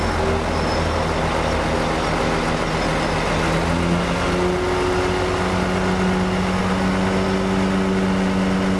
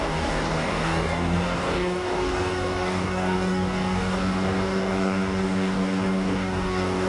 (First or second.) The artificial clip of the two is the second